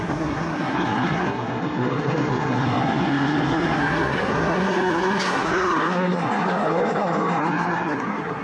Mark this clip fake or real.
fake